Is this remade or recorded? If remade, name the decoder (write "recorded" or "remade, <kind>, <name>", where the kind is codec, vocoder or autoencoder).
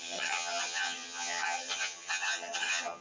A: remade, vocoder, HiFi-GAN